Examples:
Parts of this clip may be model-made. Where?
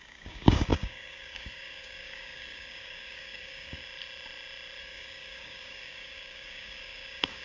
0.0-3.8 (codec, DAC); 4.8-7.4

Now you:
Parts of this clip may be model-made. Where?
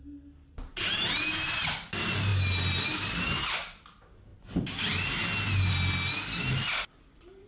none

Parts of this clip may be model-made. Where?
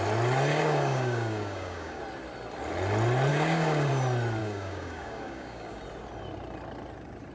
0.5-2.0 (codec, DAC); 3.3-3.9; 4.4-5.8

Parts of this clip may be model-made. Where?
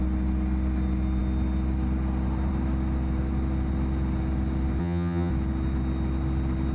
4.8-5.3 (vocoder, HiFi-GAN)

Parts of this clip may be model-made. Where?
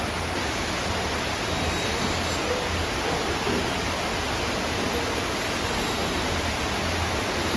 none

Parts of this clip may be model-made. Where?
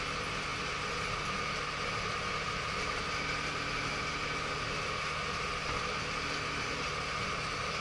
none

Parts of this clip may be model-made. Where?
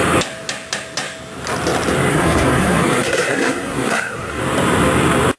2.1-4.4 (codec, SNAC)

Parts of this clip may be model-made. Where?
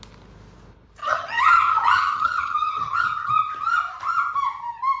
1.0-3.3 (vocoder, HiFi-GAN)